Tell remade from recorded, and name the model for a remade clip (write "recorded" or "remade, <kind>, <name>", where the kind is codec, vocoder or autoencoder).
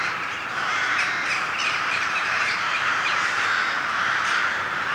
remade, vocoder, BigVGAN v2